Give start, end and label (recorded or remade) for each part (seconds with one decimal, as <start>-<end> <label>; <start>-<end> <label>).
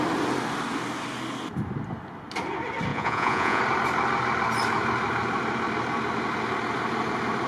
0.0-2.9 recorded; 2.9-3.6 remade; 3.6-7.5 recorded